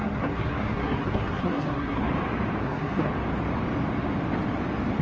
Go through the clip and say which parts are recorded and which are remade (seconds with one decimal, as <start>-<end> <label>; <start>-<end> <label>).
0.0-2.1 remade; 2.1-2.6 recorded; 2.6-3.1 remade; 3.1-5.0 recorded